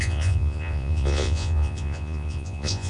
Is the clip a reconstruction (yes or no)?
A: yes